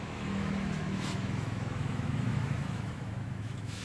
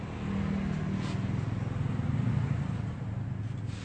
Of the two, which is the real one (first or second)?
second